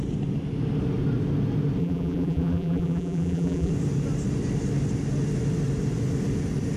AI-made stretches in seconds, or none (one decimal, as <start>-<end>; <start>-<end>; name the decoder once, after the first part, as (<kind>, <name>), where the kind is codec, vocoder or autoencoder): 1.8-3.7 (vocoder, BigVGAN v2)